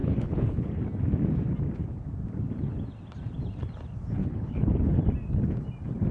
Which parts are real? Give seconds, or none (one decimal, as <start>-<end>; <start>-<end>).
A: 0.8-4.2; 5.0-6.1